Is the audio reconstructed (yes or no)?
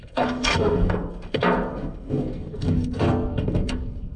yes